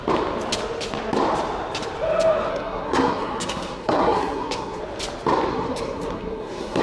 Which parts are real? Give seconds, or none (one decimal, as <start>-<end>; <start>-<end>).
0.0-2.5; 4.8-5.5